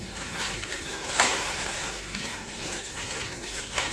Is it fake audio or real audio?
fake